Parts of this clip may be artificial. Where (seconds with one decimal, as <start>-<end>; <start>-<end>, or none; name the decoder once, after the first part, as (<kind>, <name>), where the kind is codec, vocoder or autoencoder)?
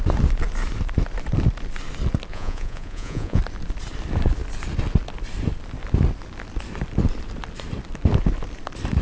2.3-3.4 (vocoder, Vocos)